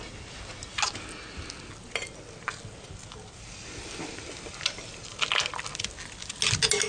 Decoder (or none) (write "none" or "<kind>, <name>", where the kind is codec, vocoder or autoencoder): none